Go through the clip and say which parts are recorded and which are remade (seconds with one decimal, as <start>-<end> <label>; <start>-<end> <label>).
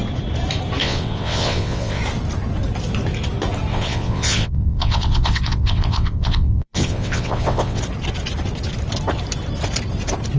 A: 0.0-0.8 recorded; 0.8-2.0 remade; 2.0-3.7 recorded; 3.7-7.8 remade; 7.8-10.4 recorded